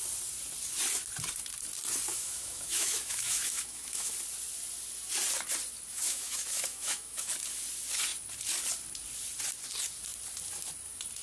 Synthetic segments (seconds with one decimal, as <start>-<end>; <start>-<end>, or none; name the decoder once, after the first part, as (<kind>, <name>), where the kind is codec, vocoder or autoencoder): 2.1-4.1 (autoencoder, DAC-VAE); 5.9-7.3